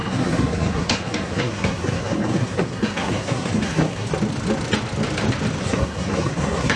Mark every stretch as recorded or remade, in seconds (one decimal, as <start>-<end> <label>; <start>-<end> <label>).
0.0-4.1 remade; 4.1-5.6 recorded; 5.6-6.8 remade